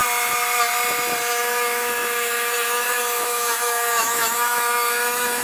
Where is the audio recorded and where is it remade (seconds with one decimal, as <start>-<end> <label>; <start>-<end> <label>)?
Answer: 0.0-1.3 recorded; 1.3-5.4 remade